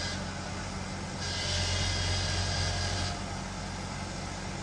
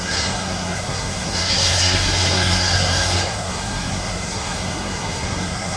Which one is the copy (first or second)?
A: second